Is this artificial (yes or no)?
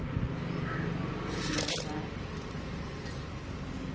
yes